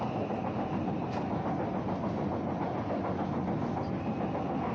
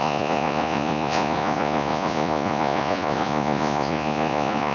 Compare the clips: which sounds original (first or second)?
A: first